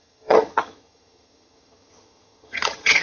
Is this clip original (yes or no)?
no